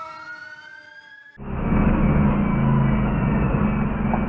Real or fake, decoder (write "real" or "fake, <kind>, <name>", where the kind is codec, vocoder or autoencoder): real